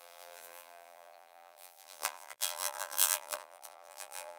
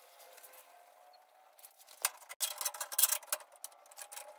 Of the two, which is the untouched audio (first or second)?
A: second